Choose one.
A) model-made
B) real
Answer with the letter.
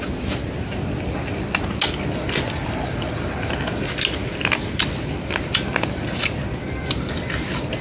B